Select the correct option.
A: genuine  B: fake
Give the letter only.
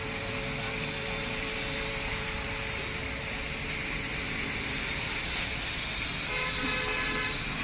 A